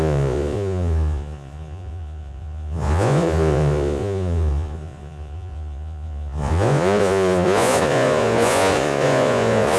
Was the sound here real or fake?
fake